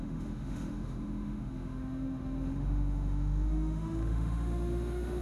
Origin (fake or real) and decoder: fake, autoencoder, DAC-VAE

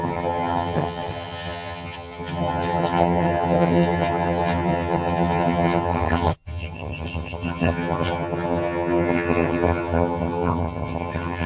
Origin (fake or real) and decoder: fake, vocoder, HiFi-GAN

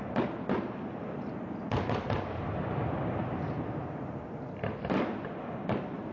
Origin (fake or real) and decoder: fake, vocoder, BigVGAN v2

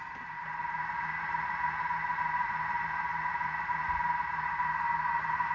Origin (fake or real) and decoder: real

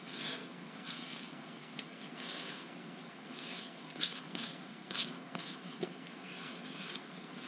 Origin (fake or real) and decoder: fake, codec, SNAC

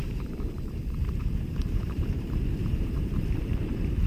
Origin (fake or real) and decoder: fake, vocoder, BigVGAN v2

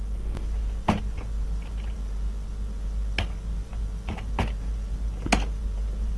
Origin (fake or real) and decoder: real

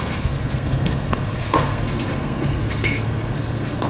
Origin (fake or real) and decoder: fake, codec, SNAC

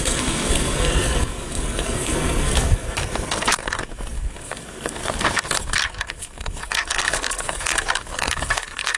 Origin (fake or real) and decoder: fake, codec, SNAC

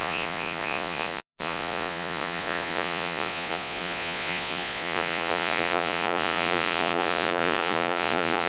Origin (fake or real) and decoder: fake, vocoder, Vocos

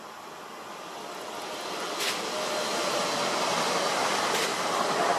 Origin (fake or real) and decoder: real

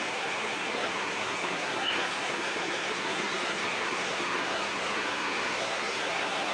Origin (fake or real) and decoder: fake, codec, SNAC